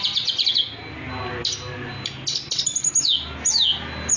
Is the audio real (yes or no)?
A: yes